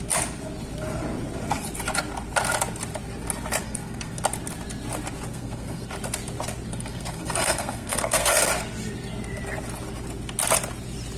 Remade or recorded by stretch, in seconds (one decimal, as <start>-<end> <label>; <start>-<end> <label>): 0.0-3.6 recorded; 3.6-4.2 remade; 4.2-5.3 recorded; 5.3-5.9 remade; 5.9-6.7 recorded; 6.7-8.5 remade; 8.5-11.2 recorded